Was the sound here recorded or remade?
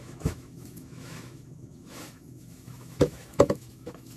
remade